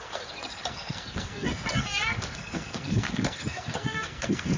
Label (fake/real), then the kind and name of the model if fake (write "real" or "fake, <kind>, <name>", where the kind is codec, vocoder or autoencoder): fake, codec, SNAC